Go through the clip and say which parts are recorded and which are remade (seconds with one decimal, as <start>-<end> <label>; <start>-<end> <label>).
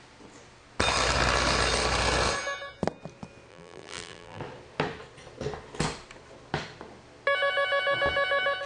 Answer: 0.0-3.5 recorded; 3.5-4.4 remade; 4.4-8.7 recorded